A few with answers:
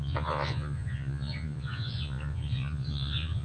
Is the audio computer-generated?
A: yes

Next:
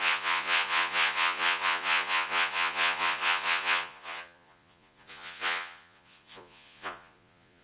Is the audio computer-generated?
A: yes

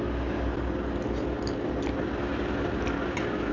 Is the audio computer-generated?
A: no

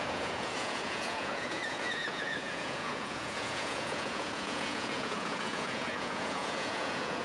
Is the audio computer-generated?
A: yes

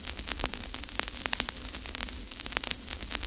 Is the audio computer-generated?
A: no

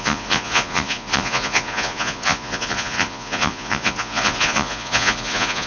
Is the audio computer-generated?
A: yes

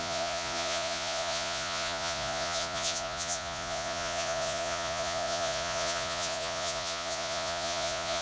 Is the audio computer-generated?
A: yes